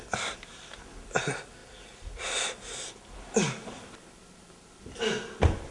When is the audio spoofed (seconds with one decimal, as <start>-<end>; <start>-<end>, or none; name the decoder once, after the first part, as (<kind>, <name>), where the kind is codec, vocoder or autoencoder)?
none